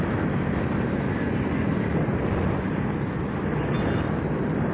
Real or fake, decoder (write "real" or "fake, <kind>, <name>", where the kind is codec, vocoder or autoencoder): real